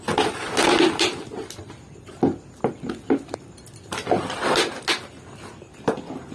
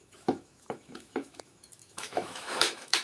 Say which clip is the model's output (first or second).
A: second